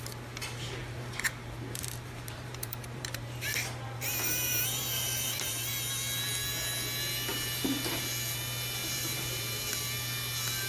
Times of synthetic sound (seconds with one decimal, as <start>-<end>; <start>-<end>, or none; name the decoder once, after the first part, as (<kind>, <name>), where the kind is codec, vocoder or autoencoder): 0.8-5.7 (vocoder, BigVGAN v2); 7.3-8.0; 8.8-9.7